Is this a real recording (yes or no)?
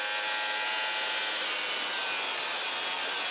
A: yes